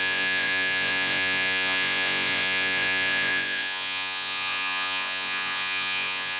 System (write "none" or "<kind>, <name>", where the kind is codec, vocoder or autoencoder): vocoder, Vocos